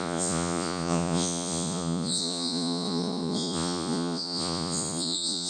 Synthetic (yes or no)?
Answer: yes